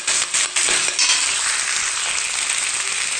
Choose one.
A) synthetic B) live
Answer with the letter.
B